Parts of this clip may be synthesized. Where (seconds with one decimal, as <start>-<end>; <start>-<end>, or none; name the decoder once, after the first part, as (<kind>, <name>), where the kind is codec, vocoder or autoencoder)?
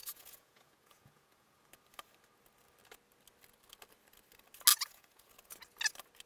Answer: 0.0-1.6 (vocoder, Vocos); 4.7-5.3